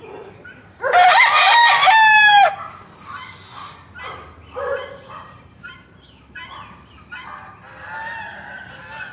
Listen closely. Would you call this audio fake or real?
real